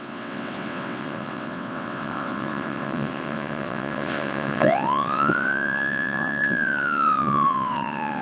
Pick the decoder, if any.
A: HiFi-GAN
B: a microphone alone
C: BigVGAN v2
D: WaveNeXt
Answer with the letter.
D